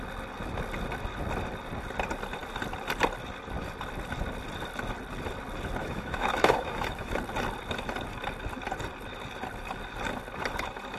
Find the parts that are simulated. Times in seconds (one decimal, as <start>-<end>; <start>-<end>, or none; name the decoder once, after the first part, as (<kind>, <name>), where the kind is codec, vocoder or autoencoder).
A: 5.8-7.1 (autoencoder, DAC-VAE)